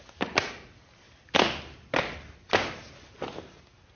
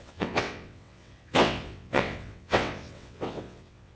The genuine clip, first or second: first